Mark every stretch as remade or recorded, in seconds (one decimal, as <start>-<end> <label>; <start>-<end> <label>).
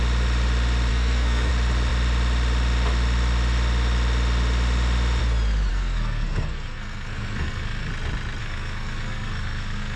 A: 0.0-0.9 recorded; 0.9-1.5 remade; 1.5-5.7 recorded; 5.7-7.9 remade; 7.9-8.4 recorded; 8.4-10.0 remade